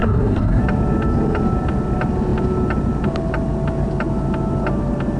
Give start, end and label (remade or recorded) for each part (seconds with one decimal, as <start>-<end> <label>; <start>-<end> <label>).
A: 0.0-0.6 remade; 0.6-5.2 recorded